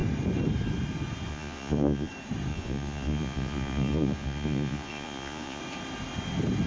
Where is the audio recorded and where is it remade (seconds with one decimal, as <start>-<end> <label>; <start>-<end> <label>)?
0.0-1.3 recorded; 1.3-2.1 remade; 2.1-2.5 recorded; 2.5-5.6 remade; 5.6-6.7 recorded

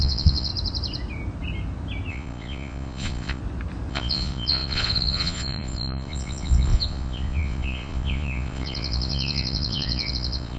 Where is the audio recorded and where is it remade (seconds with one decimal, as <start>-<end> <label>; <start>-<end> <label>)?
0.0-0.5 remade; 0.5-2.1 recorded; 2.1-3.4 remade; 3.4-3.9 recorded; 3.9-10.6 remade

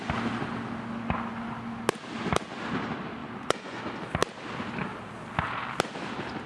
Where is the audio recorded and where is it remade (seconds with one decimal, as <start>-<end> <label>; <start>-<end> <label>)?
0.0-3.2 recorded; 3.2-3.8 remade; 3.8-6.5 recorded

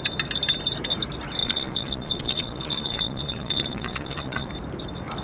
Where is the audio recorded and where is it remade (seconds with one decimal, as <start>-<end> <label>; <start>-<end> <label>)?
0.0-1.4 recorded; 1.4-4.5 remade; 4.5-5.2 recorded

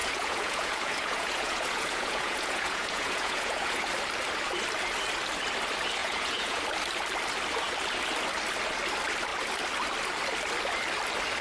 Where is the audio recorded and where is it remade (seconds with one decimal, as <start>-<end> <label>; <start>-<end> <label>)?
0.0-3.9 remade; 3.9-6.0 recorded; 6.0-6.6 remade; 6.6-11.4 recorded

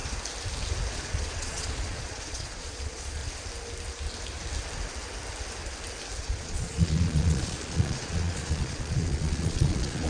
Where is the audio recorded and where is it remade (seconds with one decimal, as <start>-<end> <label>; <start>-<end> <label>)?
0.0-0.9 recorded; 0.9-3.2 remade; 3.2-6.2 recorded; 6.2-10.1 remade